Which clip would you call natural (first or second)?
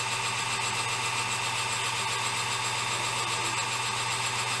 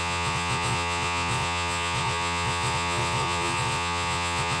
first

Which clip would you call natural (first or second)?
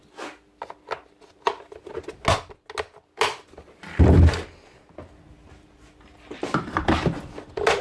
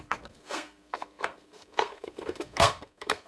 first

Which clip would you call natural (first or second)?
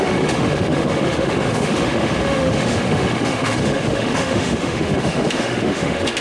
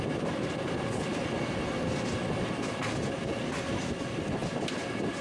second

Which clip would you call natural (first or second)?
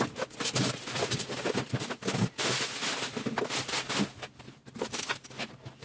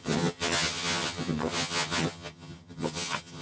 first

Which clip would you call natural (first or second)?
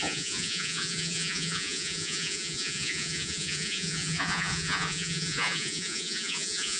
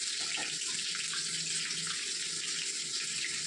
second